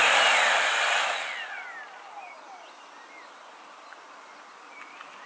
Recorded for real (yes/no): no